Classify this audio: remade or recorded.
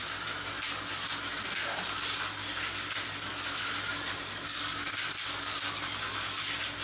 recorded